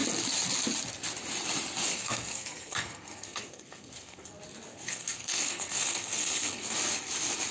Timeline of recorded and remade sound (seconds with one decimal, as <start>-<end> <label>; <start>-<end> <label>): 0.0-1.9 recorded; 1.9-4.3 remade; 4.3-4.7 recorded; 4.7-6.8 remade; 6.8-7.5 recorded